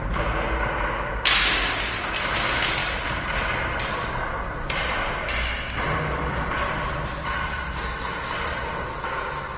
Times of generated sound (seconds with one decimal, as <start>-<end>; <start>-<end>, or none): none